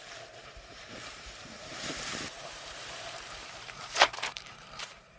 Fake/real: fake